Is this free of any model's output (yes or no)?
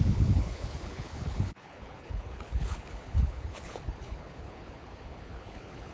no